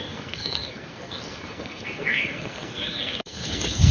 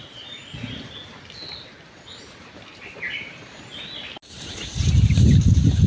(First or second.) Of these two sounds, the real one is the second